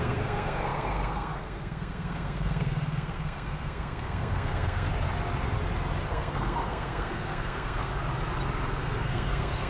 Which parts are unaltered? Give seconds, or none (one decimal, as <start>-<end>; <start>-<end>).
4.9-6.1; 7.9-8.8